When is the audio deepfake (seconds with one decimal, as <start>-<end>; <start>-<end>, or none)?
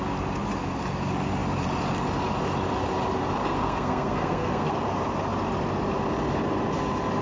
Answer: 3.4-4.7